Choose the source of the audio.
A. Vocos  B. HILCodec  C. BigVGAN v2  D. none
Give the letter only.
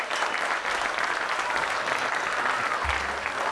D